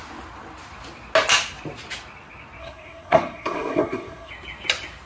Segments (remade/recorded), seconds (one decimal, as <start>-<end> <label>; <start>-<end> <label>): 0.0-2.6 recorded; 2.6-4.3 remade; 4.3-5.1 recorded